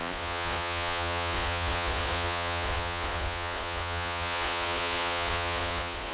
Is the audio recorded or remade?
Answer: remade